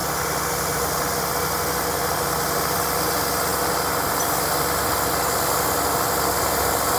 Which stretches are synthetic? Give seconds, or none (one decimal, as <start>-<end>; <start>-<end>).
none